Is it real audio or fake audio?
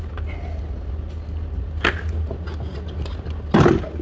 real